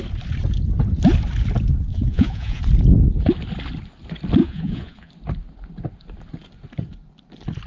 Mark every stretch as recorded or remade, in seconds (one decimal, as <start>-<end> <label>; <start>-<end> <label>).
0.0-1.9 recorded; 1.9-2.6 remade; 2.6-4.4 recorded; 4.4-5.1 remade; 5.1-7.7 recorded